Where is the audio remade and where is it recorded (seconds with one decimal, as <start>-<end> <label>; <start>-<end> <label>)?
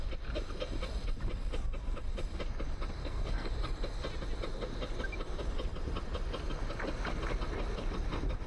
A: 0.0-3.0 recorded; 3.0-3.5 remade; 3.5-8.5 recorded